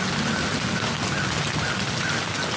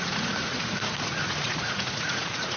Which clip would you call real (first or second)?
first